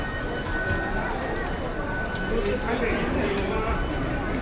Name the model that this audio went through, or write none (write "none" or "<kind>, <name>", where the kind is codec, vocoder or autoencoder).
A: none